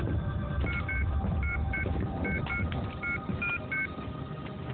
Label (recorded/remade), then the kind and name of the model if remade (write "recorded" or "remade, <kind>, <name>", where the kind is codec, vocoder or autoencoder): recorded